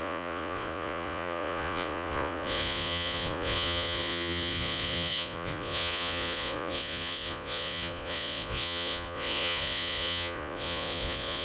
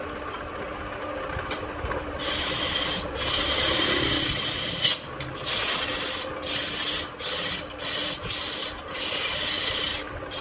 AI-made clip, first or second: first